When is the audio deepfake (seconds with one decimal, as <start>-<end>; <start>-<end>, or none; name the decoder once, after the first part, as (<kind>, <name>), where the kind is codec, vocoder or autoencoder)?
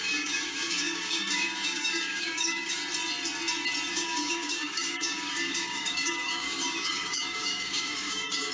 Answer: 0.0-2.8 (codec, DAC); 3.9-8.5